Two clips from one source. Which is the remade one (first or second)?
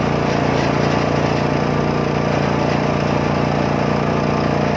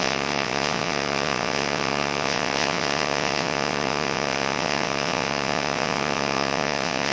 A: second